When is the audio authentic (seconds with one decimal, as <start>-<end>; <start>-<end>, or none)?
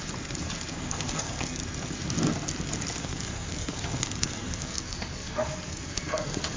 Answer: 0.0-0.7; 1.6-3.0